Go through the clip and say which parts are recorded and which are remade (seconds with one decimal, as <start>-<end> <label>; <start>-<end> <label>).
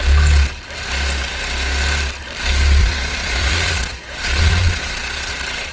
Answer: 0.0-2.8 recorded; 2.8-5.3 remade; 5.3-5.7 recorded